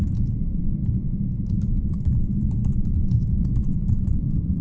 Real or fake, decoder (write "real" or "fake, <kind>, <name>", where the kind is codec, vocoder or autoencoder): fake, vocoder, BigVGAN v2